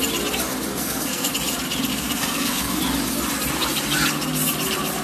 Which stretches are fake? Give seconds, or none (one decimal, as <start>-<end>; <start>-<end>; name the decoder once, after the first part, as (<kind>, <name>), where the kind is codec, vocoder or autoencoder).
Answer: 0.7-1.3 (codec, SNAC); 1.9-2.8